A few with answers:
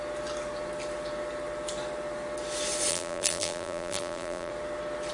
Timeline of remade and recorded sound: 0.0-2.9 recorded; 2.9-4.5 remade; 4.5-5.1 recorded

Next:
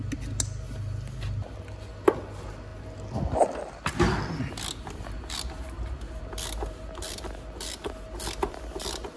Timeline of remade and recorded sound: 0.0-9.2 recorded

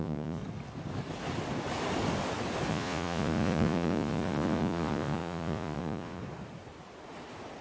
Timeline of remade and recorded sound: 0.0-0.4 remade; 0.4-2.7 recorded; 2.7-6.2 remade; 6.2-7.6 recorded

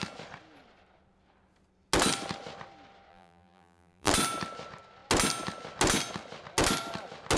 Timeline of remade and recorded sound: 0.0-3.1 recorded; 3.1-4.1 remade; 4.1-7.4 recorded